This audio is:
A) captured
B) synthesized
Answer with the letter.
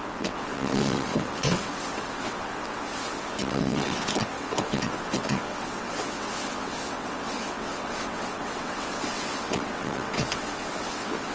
B